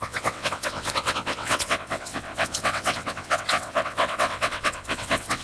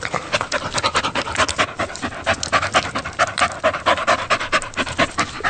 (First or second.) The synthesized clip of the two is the first